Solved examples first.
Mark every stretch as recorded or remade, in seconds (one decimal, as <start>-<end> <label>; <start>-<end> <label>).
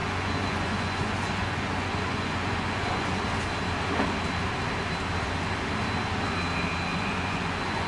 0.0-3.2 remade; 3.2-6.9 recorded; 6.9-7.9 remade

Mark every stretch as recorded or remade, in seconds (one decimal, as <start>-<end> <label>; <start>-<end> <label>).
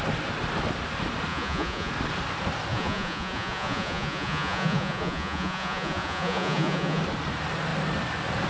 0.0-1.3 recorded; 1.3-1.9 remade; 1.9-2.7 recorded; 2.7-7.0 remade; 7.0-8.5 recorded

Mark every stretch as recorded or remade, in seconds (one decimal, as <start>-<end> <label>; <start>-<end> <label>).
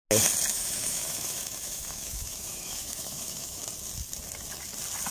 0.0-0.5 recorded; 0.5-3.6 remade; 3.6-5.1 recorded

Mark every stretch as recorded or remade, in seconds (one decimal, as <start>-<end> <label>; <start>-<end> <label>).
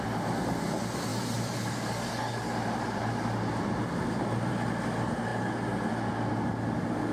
0.0-7.1 recorded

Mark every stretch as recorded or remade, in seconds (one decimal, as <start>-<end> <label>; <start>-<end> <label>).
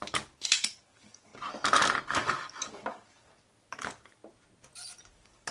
0.0-1.3 remade; 1.3-2.1 recorded; 2.1-4.2 remade; 4.2-5.1 recorded; 5.1-5.5 remade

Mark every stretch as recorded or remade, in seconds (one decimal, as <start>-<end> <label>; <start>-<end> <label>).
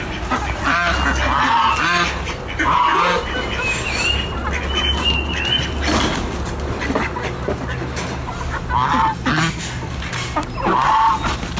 0.0-11.6 recorded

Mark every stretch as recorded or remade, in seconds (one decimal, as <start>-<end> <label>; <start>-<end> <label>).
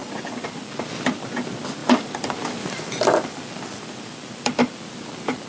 0.0-1.3 remade; 1.3-1.8 recorded; 1.8-4.6 remade; 4.6-5.5 recorded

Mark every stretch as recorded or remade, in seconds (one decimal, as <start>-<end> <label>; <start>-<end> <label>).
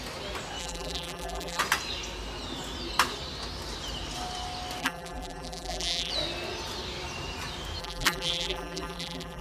0.0-0.6 recorded; 0.6-1.6 remade; 1.6-4.8 recorded; 4.8-6.1 remade; 6.1-7.8 recorded; 7.8-9.4 remade